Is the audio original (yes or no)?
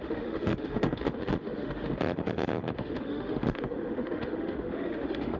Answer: no